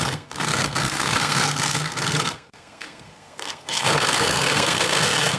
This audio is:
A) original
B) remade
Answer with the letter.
B